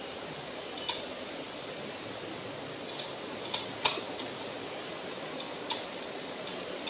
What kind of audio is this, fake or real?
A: real